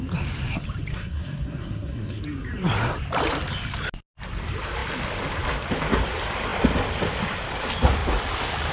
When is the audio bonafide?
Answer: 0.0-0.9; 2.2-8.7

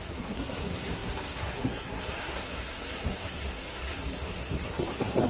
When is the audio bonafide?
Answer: none

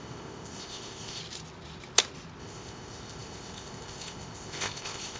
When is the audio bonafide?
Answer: 1.2-2.4